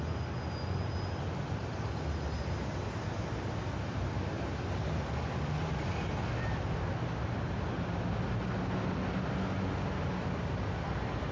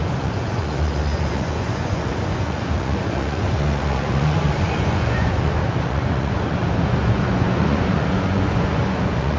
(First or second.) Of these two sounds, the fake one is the second